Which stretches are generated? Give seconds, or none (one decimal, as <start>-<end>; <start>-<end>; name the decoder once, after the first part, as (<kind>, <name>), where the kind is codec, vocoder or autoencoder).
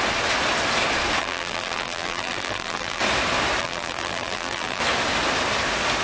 1.2-3.0 (vocoder, BigVGAN v2); 3.6-4.8